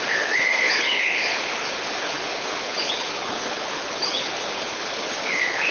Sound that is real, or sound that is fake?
fake